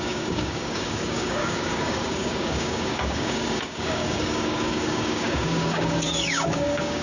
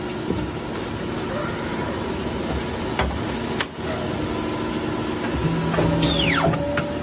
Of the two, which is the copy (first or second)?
first